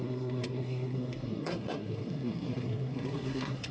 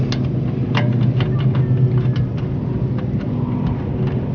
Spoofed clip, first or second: first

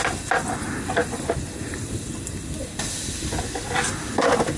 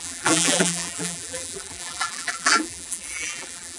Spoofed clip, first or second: second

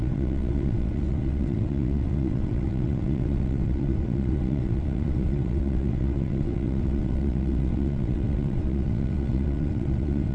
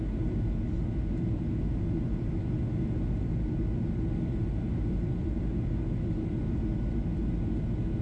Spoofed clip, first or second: first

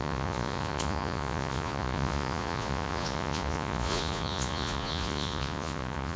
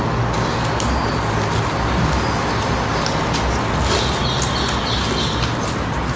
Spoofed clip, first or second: first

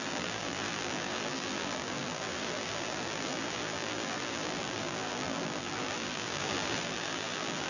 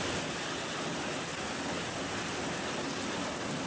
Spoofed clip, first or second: first